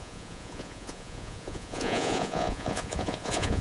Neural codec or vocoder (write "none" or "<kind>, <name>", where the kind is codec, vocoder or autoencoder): vocoder, Vocos